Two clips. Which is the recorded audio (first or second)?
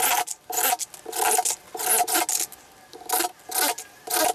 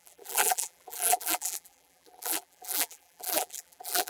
first